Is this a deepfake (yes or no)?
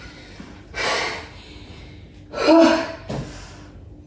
no